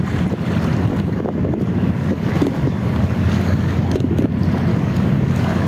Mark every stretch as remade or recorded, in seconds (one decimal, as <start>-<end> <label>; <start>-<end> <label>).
0.0-0.9 recorded; 0.9-4.3 remade; 4.3-4.7 recorded; 4.7-5.7 remade